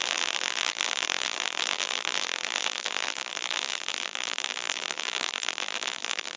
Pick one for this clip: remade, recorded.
remade